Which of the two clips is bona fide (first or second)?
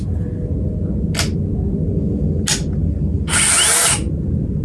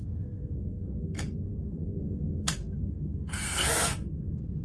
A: first